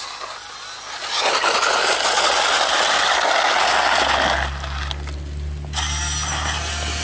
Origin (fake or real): real